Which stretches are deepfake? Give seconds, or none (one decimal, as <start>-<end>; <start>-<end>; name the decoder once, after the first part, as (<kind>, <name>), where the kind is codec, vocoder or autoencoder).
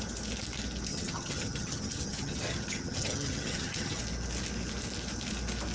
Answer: 0.9-4.0 (vocoder, HiFi-GAN)